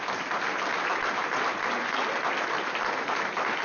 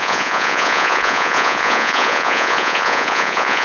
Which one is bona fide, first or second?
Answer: first